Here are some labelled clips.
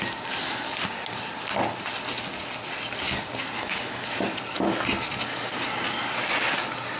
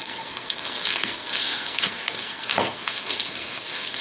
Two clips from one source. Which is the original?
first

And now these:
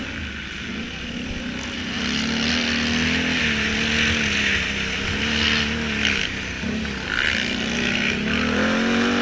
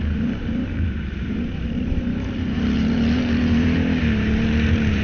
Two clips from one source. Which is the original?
first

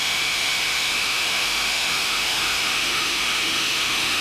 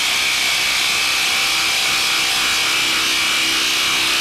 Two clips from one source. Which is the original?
second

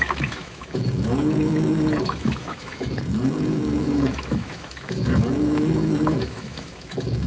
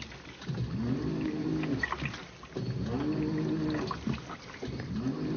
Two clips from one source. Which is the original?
second